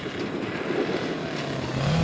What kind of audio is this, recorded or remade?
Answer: recorded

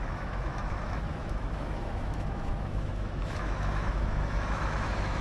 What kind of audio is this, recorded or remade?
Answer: remade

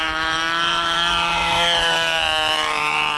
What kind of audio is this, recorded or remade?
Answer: remade